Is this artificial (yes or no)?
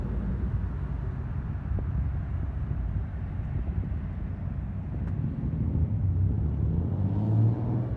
no